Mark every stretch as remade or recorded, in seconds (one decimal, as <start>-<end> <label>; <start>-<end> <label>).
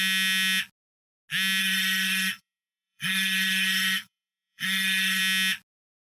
0.0-1.6 recorded; 1.6-5.2 remade; 5.2-6.1 recorded